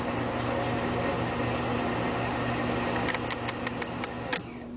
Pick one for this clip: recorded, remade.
recorded